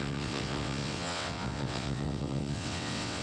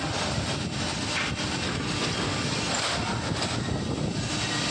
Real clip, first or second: second